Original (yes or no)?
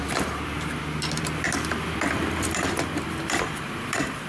no